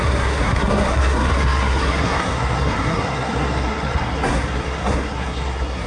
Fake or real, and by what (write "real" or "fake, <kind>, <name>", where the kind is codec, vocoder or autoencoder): fake, codec, SNAC